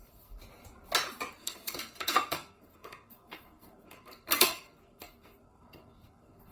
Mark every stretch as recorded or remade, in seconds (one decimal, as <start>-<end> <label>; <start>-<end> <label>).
0.0-0.4 remade; 0.4-1.4 recorded; 1.4-6.5 remade